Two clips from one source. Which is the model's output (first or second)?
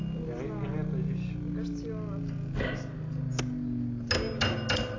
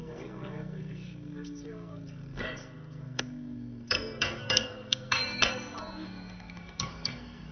second